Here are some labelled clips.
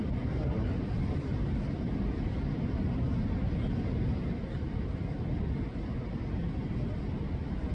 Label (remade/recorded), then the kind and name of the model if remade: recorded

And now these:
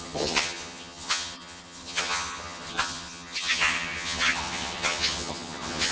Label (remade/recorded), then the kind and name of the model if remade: remade, vocoder, HiFi-GAN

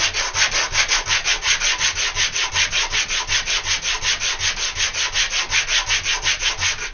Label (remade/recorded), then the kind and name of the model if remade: recorded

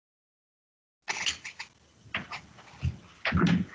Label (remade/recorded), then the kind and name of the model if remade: recorded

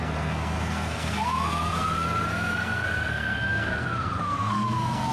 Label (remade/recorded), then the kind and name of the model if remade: remade, codec, SNAC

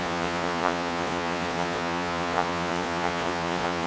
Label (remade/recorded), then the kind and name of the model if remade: remade, vocoder, Vocos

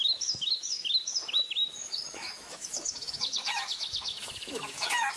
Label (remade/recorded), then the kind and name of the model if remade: remade, autoencoder, DAC-VAE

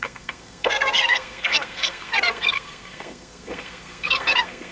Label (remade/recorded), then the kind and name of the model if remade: remade, codec, SNAC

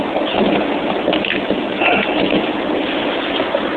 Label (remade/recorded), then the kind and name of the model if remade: recorded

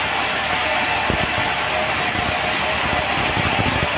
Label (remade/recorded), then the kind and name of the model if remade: recorded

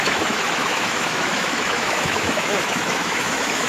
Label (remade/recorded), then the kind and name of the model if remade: remade, autoencoder, DAC-VAE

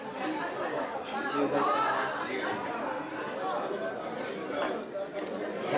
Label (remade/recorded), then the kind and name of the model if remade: recorded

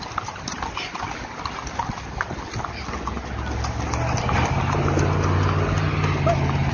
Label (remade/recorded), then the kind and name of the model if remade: recorded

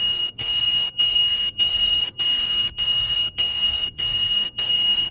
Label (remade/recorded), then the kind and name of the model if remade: remade, codec, SNAC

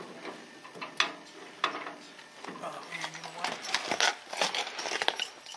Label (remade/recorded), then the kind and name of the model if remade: recorded